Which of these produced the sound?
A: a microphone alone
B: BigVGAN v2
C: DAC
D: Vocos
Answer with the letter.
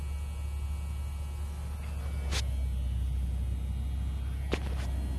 A